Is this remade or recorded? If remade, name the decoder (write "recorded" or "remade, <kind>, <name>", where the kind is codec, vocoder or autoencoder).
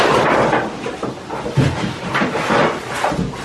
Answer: recorded